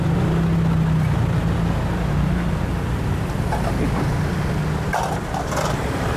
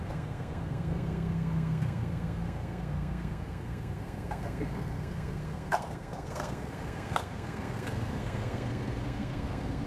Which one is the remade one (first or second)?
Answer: second